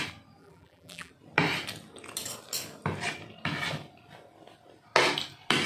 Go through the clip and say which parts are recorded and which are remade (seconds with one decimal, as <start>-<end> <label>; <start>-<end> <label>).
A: 0.0-0.4 recorded; 0.4-1.1 remade; 1.1-5.7 recorded